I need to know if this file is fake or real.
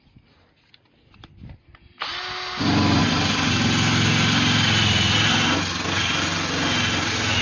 real